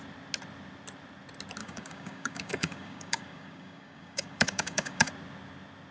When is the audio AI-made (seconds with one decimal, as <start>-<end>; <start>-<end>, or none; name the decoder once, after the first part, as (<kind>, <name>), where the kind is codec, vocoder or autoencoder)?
1.6-5.1 (codec, DAC)